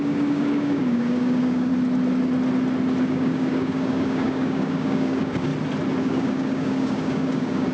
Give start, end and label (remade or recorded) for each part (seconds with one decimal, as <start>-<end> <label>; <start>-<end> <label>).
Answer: 0.0-1.7 remade; 1.7-3.0 recorded; 3.0-5.5 remade; 5.5-6.0 recorded; 6.0-7.7 remade

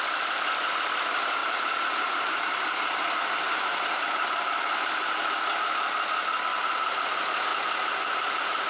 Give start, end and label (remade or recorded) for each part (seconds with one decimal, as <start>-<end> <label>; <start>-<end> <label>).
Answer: 0.0-1.4 recorded; 1.4-5.2 remade; 5.2-6.5 recorded; 6.5-7.0 remade; 7.0-8.7 recorded

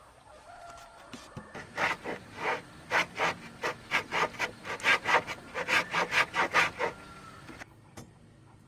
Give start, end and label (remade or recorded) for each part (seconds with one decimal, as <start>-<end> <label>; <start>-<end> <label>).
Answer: 0.0-8.7 recorded